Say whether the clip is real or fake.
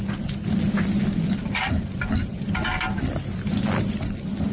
real